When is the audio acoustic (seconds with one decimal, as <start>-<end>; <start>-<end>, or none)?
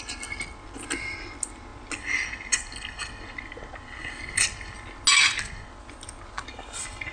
0.0-7.1